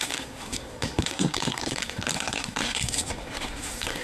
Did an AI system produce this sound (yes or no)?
yes